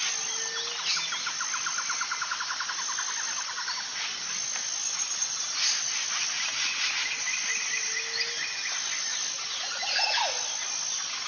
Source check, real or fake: real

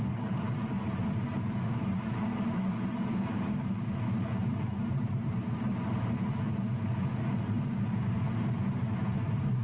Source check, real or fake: fake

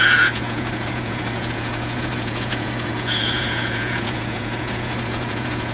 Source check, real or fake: fake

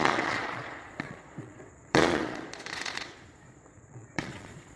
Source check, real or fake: fake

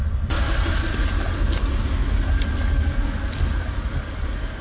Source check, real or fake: real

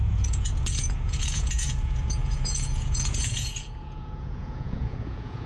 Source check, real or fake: fake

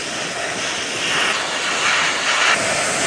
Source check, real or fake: real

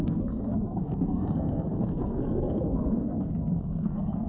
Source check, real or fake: fake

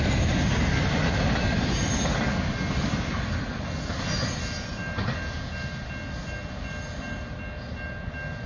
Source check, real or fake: real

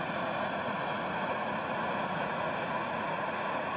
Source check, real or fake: fake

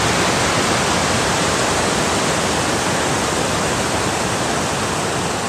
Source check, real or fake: real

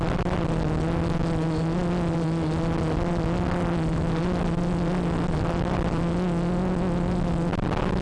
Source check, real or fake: real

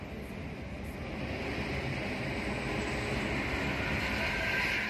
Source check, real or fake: real